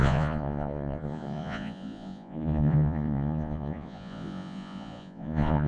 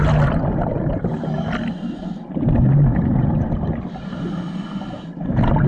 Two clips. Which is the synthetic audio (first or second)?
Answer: first